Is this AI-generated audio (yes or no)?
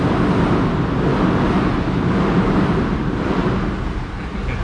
no